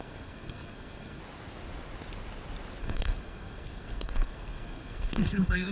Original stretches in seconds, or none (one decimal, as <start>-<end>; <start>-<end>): 1.2-2.8